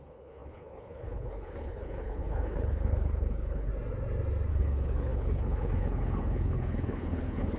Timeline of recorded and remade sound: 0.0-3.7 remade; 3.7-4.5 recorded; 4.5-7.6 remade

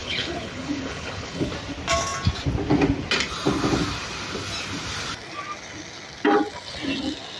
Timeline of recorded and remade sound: 0.0-1.5 remade; 1.5-7.4 recorded

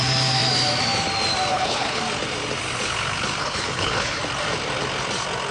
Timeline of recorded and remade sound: 0.0-1.5 recorded; 1.5-2.0 remade; 2.0-3.4 recorded; 3.4-4.2 remade; 4.2-5.5 recorded

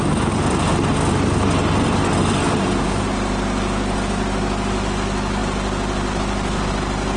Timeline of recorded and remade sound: 0.0-7.2 recorded